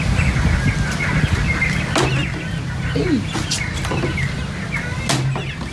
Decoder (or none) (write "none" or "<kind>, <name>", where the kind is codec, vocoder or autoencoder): none